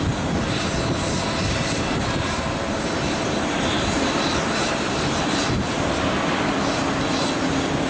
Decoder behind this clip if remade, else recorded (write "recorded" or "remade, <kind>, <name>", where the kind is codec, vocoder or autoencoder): recorded